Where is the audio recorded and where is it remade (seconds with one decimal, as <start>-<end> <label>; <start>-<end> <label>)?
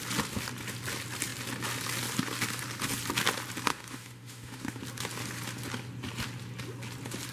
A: 0.0-3.7 recorded; 3.7-4.8 remade; 4.8-7.3 recorded